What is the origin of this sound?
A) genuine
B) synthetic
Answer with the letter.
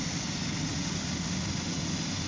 A